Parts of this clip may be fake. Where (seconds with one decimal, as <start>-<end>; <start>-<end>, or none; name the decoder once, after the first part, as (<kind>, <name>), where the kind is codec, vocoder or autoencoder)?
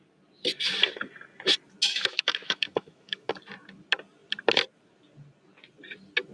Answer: 1.9-3.3 (autoencoder, DAC-VAE)